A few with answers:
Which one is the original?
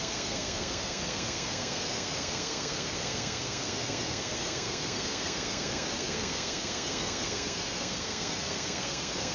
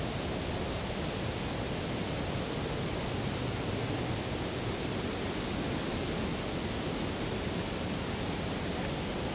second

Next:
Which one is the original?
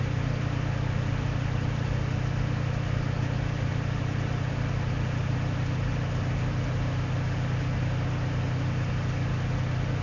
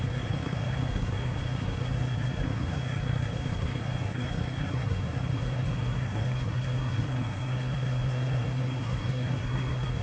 first